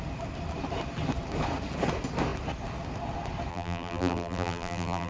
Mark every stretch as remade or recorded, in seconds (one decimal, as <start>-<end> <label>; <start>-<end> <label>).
0.0-3.5 recorded; 3.5-5.1 remade